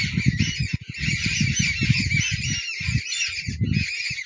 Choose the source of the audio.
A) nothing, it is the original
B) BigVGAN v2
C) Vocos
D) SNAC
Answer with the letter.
A